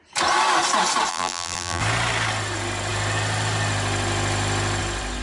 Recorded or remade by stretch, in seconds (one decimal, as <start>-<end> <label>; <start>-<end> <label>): 0.0-1.1 recorded; 1.1-1.8 remade; 1.8-5.2 recorded